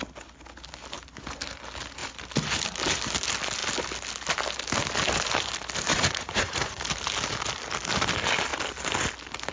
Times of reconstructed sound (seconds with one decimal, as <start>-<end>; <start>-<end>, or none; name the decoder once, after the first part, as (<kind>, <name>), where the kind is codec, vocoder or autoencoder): 5.9-6.8 (vocoder, Vocos)